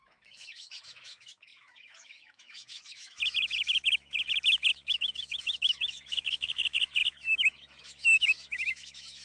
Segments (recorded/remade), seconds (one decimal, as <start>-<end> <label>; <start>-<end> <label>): 0.0-9.2 remade